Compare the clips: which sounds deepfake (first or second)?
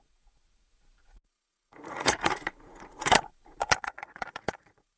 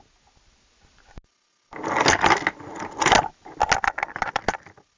first